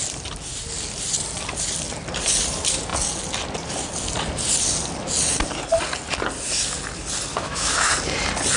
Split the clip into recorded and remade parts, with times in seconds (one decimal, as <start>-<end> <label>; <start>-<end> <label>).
0.0-7.3 recorded; 7.3-7.9 remade; 7.9-8.6 recorded